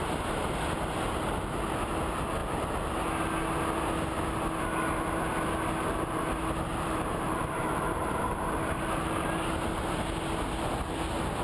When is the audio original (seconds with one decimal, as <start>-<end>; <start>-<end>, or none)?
0.0-6.7; 10.0-11.4